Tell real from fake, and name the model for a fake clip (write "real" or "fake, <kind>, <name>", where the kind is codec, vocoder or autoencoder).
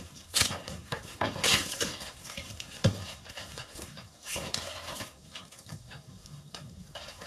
fake, codec, SNAC